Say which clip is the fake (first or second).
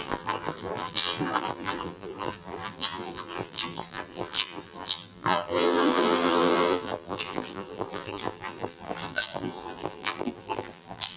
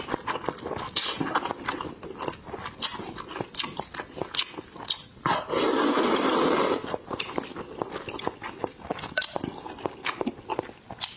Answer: first